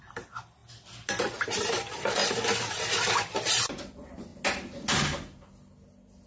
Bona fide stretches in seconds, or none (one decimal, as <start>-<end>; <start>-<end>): 0.6-1.6; 2.2-3.1; 4.3-6.3